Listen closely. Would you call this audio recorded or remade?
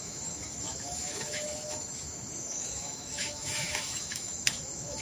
remade